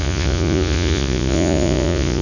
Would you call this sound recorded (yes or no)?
no